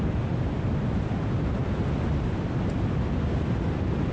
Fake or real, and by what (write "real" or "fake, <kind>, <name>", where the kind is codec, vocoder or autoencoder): real